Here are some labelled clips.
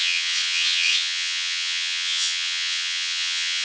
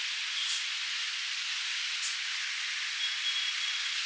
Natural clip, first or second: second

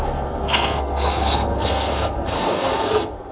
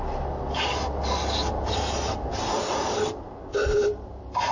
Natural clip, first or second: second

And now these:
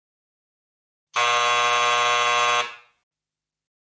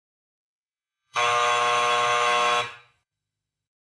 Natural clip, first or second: first